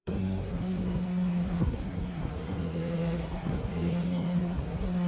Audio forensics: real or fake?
fake